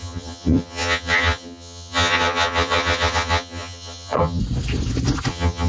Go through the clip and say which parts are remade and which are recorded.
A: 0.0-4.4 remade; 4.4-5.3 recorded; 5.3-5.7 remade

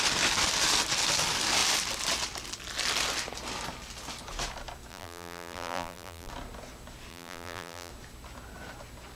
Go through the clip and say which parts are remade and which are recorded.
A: 0.0-4.9 recorded; 4.9-6.3 remade; 6.3-7.1 recorded; 7.1-7.9 remade; 7.9-9.2 recorded

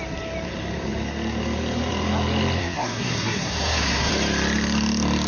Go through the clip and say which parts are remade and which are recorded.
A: 0.0-2.6 recorded; 2.6-4.1 remade; 4.1-5.3 recorded

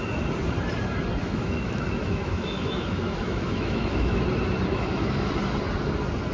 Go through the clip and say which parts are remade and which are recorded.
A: 0.0-1.2 recorded; 1.2-4.2 remade; 4.2-4.7 recorded; 4.7-5.3 remade; 5.3-6.3 recorded

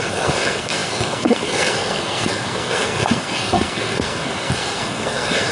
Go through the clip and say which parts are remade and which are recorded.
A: 0.0-5.5 remade

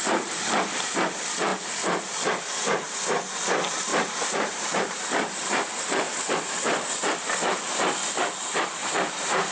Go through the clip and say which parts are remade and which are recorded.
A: 0.0-3.9 recorded; 3.9-6.3 remade; 6.3-8.8 recorded; 8.8-9.5 remade

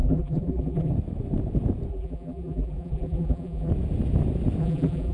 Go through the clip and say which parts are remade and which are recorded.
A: 0.0-0.9 remade; 0.9-1.9 recorded; 1.9-3.7 remade; 3.7-4.6 recorded; 4.6-5.1 remade

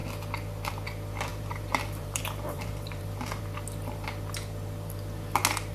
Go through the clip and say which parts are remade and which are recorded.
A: 0.0-1.3 recorded; 1.3-3.4 remade; 3.4-5.7 recorded